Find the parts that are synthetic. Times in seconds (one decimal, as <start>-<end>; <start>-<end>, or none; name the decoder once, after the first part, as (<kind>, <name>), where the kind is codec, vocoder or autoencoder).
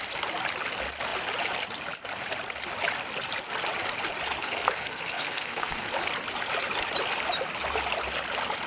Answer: 4.4-5.9 (codec, SNAC)